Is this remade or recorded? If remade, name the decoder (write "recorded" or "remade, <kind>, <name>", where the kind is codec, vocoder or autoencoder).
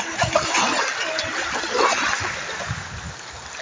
recorded